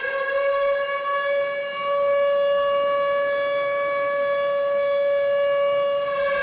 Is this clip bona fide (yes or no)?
yes